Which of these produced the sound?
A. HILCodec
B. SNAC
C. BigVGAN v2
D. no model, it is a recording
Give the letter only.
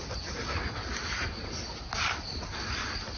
D